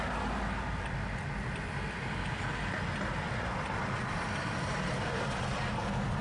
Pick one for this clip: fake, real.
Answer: real